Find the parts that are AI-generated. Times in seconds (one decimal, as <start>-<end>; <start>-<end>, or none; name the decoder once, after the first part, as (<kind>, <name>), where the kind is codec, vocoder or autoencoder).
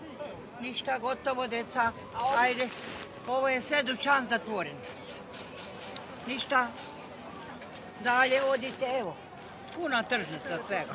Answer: none